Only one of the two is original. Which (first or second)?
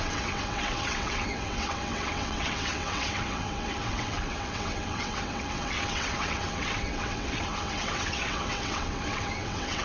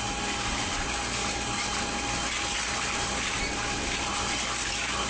second